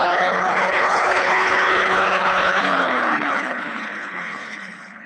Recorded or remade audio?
remade